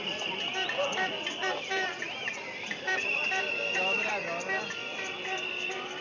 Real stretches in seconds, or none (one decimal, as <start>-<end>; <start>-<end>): 0.0-0.9; 4.1-4.8